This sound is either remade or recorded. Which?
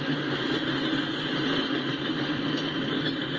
recorded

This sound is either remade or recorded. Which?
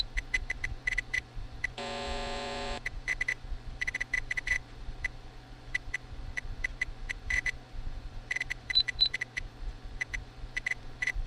remade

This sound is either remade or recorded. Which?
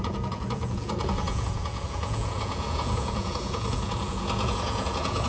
remade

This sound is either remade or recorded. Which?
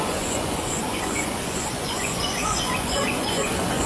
remade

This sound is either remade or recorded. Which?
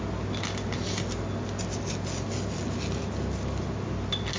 recorded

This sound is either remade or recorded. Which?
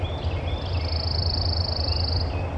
recorded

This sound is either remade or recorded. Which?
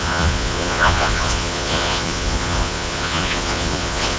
remade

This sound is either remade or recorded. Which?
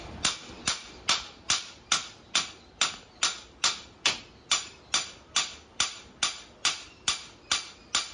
recorded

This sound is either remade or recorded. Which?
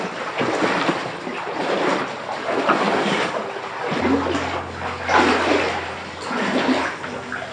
recorded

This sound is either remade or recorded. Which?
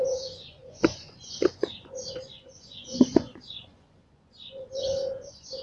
remade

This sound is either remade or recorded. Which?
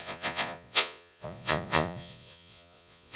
remade